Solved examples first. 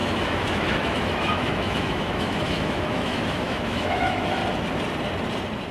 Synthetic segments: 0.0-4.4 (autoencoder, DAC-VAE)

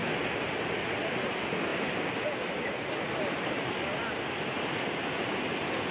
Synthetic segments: none